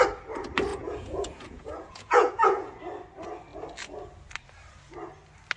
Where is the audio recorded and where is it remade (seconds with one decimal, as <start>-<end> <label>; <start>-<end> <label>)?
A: 0.0-0.7 recorded; 0.7-2.8 remade; 2.8-5.6 recorded